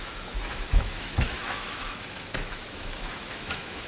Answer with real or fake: fake